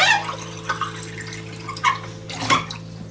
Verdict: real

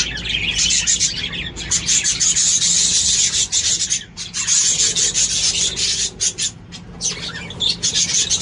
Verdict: real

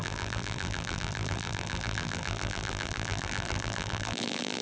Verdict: fake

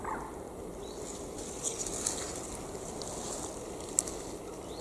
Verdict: real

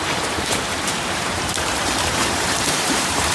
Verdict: fake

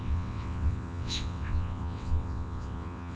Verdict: fake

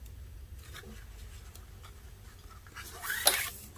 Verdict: real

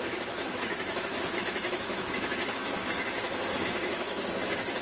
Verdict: fake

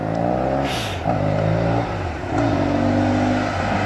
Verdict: real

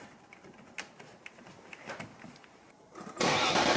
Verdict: fake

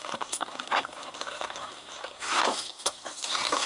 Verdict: fake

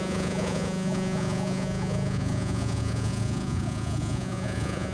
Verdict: fake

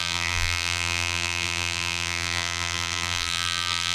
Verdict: fake